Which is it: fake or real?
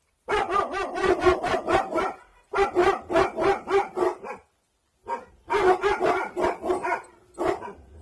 real